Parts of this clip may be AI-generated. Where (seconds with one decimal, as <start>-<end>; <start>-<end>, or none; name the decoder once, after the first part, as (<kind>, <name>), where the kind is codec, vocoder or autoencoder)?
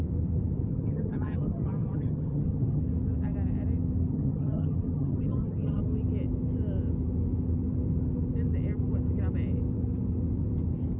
0.7-2.8 (vocoder, HiFi-GAN); 4.1-5.8